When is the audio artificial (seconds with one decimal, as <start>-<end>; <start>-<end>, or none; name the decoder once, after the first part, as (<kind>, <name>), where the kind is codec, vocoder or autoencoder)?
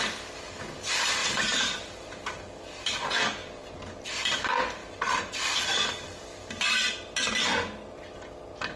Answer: 1.2-2.3 (vocoder, BigVGAN v2); 3.4-4.2; 4.8-5.6